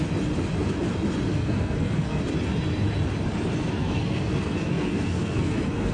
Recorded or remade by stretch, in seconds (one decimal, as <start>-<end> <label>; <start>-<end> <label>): 0.0-1.3 recorded; 1.3-2.2 remade; 2.2-3.8 recorded; 3.8-5.9 remade